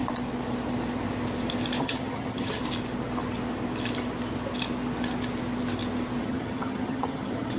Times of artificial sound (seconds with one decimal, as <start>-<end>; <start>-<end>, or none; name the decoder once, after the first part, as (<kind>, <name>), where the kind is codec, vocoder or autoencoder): 1.8-2.6 (vocoder, HiFi-GAN); 6.2-7.6